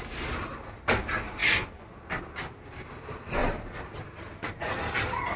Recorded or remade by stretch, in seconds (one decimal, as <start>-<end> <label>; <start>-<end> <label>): 0.0-3.4 recorded; 3.4-4.3 remade; 4.3-5.4 recorded